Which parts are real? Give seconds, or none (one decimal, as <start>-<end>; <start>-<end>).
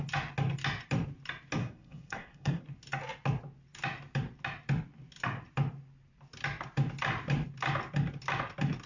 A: 0.0-1.6; 2.6-8.9